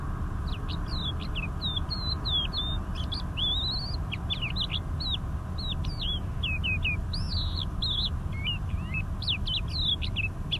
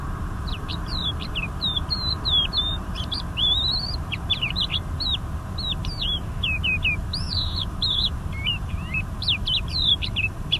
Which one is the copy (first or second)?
second